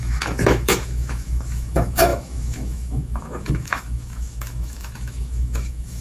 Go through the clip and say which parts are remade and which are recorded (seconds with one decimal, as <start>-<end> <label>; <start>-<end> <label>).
0.0-6.0 remade

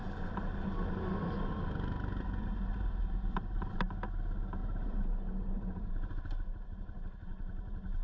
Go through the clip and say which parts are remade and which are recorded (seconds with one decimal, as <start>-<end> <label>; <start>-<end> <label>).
0.0-0.5 remade; 0.5-2.7 recorded; 2.7-3.7 remade; 3.7-4.6 recorded; 4.6-5.9 remade; 5.9-8.0 recorded

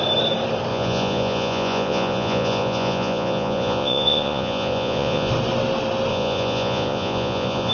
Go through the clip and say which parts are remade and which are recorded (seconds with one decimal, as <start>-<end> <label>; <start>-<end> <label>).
0.0-0.7 recorded; 0.7-5.3 remade; 5.3-6.1 recorded; 6.1-7.7 remade

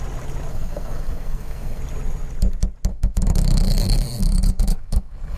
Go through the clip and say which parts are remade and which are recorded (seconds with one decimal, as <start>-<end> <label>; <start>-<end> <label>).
0.0-0.5 recorded; 0.5-1.8 remade; 1.8-2.9 recorded; 2.9-5.4 remade

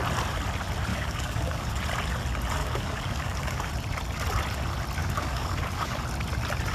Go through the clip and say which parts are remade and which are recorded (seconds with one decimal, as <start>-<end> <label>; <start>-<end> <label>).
0.0-0.9 recorded; 0.9-1.8 remade; 1.8-2.6 recorded; 2.6-3.7 remade; 3.7-5.0 recorded; 5.0-6.0 remade; 6.0-6.7 recorded

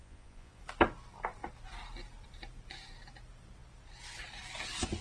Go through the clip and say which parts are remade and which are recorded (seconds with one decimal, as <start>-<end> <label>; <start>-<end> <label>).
0.0-0.6 remade; 0.6-5.0 recorded

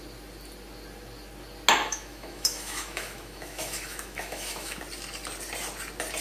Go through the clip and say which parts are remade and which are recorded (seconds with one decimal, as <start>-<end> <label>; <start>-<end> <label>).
0.0-1.7 recorded; 1.7-4.8 remade; 4.8-6.2 recorded